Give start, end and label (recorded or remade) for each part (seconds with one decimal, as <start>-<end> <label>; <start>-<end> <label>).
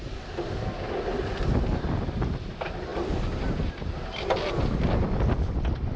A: 0.0-6.0 recorded